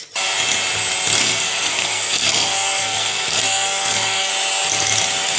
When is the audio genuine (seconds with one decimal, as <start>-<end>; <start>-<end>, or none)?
0.0-1.2; 4.3-5.4